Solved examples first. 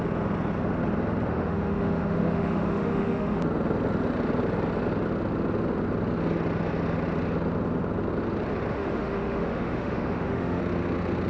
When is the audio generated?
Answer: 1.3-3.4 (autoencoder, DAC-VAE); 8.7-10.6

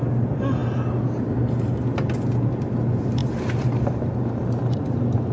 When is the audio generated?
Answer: none

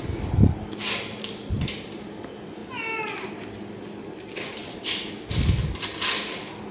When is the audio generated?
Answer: none

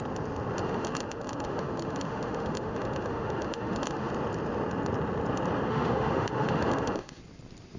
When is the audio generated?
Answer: 0.6-4.1 (autoencoder, DAC-VAE); 5.7-7.2